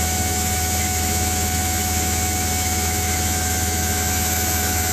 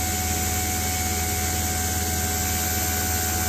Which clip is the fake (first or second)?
first